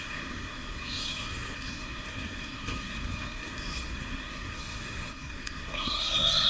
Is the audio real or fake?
fake